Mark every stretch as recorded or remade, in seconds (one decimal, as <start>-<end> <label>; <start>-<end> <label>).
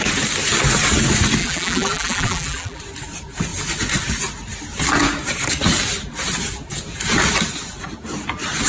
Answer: 0.0-1.4 recorded; 1.4-2.8 remade; 2.8-8.7 recorded